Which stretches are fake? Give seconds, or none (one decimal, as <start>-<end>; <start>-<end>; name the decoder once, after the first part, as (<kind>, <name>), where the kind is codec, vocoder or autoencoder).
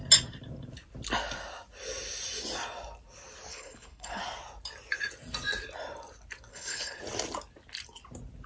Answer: 3.5-4.2 (codec, HILCodec); 6.5-7.0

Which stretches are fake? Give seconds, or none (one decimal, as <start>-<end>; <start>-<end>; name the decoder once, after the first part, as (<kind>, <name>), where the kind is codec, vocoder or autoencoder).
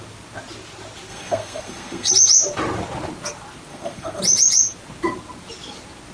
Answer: 1.1-2.1 (codec, SNAC); 3.7-4.2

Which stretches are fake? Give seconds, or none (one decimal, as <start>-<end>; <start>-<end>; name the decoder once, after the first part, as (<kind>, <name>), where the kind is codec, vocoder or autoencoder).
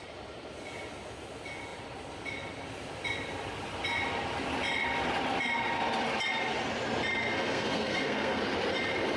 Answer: 7.2-8.4 (codec, SNAC)